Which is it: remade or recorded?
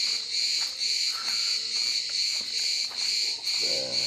recorded